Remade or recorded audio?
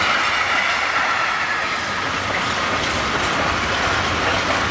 recorded